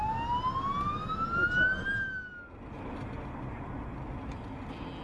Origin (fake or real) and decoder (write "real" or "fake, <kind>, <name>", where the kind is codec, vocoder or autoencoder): real